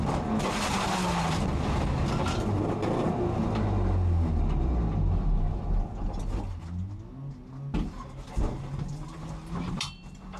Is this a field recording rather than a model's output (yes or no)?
yes